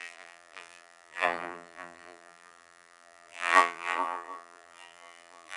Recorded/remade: remade